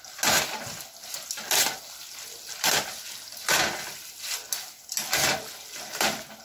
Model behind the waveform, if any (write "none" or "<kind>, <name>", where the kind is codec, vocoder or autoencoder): none